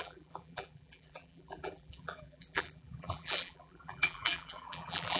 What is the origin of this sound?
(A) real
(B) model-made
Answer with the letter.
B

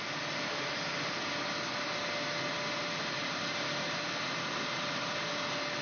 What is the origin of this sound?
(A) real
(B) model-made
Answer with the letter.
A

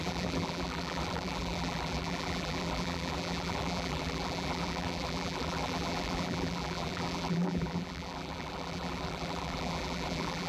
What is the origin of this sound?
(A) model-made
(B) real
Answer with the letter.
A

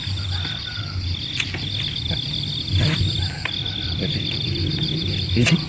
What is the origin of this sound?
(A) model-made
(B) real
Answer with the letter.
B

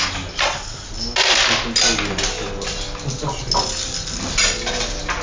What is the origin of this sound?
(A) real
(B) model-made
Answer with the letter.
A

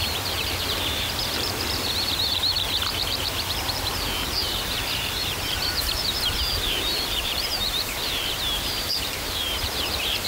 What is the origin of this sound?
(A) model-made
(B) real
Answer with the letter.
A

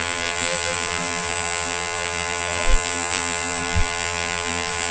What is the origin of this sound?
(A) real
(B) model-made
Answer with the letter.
B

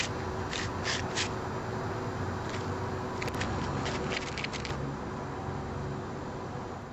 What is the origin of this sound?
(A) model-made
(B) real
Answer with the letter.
B